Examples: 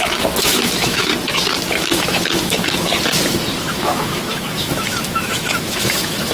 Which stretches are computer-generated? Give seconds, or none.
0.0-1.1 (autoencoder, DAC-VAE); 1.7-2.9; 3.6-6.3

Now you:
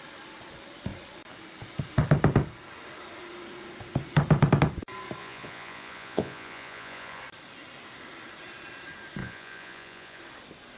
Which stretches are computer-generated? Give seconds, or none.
5.2-7.2 (vocoder, Vocos); 9.2-10.2

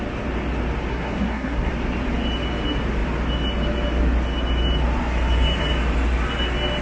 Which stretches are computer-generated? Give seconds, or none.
0.9-1.7 (codec, SNAC)

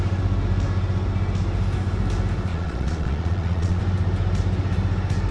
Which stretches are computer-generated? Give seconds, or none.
2.5-3.8 (vocoder, Vocos)

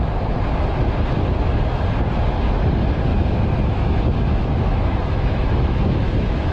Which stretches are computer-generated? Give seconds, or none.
3.1-6.5 (autoencoder, DAC-VAE)

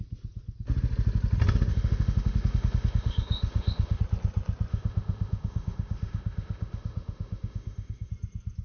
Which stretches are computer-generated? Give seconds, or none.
1.7-4.0 (autoencoder, DAC-VAE); 4.7-8.1